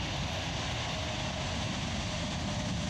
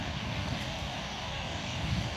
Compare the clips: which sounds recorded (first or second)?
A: first